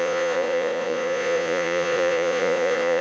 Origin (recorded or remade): remade